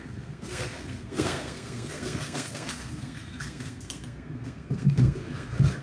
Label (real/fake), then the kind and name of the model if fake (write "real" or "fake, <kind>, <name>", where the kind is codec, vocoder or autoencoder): fake, codec, SNAC